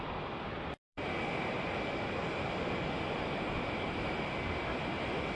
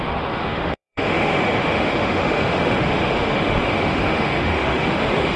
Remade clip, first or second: second